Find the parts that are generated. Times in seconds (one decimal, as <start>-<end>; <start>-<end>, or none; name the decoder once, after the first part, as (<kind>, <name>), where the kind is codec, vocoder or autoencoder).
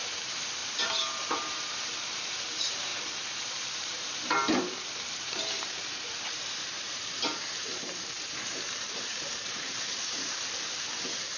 0.0-11.4 (vocoder, BigVGAN v2)